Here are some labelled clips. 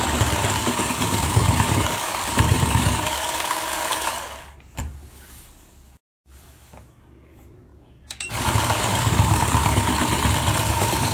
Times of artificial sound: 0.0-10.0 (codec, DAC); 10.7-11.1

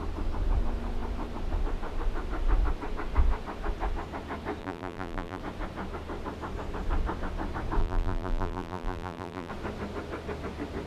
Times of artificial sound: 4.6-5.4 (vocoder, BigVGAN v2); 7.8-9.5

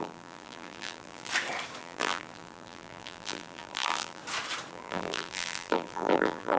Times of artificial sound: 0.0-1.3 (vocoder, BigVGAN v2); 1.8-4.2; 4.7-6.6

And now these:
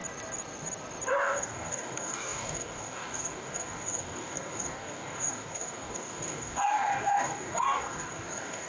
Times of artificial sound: 1.2-8.7 (codec, DAC)

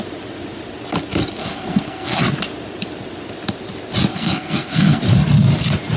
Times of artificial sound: 1.4-2.2 (codec, SNAC); 4.1-5.0